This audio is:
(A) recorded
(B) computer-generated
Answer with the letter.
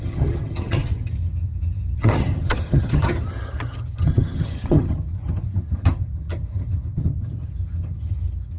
B